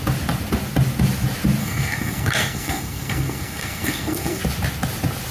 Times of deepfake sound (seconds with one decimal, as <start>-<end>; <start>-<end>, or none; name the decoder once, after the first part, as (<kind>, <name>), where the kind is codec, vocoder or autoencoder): 1.6-4.4 (codec, SNAC)